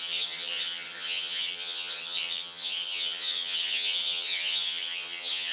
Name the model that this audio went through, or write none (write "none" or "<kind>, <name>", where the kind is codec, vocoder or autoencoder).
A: vocoder, HiFi-GAN